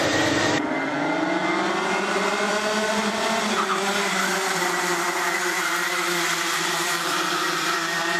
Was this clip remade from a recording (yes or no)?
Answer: yes